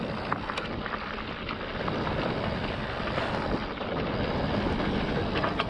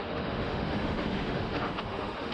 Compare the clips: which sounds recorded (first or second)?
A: first